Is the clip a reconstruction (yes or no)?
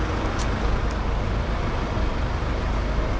no